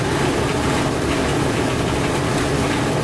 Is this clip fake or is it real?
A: real